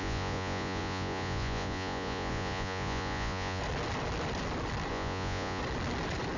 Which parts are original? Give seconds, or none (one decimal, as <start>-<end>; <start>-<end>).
3.6-4.9; 5.6-6.4